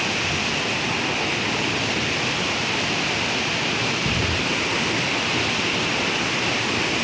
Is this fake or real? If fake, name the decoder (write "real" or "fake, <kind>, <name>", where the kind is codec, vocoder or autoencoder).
real